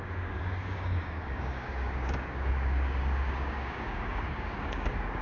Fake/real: fake